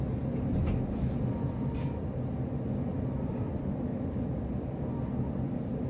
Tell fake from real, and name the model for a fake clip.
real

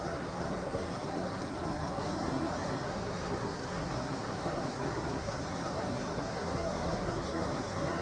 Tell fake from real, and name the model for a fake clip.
fake, codec, SNAC